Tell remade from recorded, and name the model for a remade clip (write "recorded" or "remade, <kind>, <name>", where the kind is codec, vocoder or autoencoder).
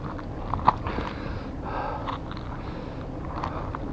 recorded